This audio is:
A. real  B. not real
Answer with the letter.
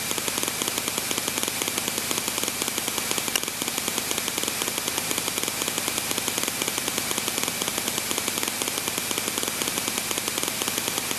A